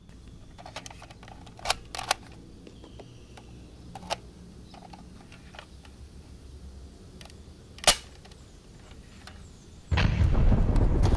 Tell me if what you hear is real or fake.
real